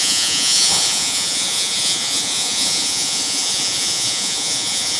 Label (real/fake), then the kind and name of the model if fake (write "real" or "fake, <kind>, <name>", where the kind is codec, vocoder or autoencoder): fake, vocoder, Vocos